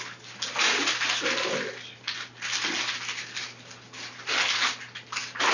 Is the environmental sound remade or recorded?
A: recorded